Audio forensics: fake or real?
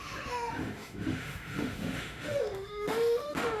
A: fake